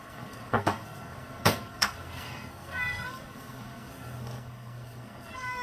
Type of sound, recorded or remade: remade